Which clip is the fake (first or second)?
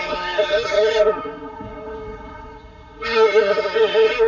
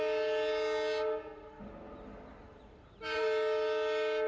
first